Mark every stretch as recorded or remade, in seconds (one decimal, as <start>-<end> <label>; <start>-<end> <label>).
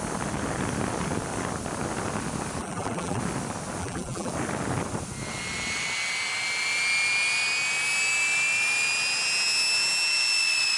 0.0-2.6 recorded; 2.6-3.2 remade; 3.2-3.8 recorded; 3.8-4.3 remade; 4.3-10.8 recorded